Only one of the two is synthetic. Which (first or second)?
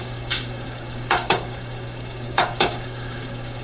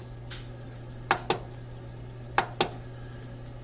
first